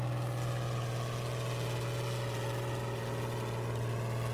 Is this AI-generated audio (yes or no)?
no